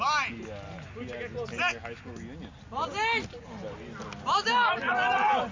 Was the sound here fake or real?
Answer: real